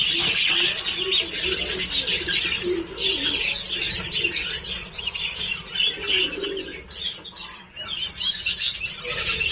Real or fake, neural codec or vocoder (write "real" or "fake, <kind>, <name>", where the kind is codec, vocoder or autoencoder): real